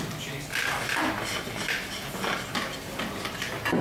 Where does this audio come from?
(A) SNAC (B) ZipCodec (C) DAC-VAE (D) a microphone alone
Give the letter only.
D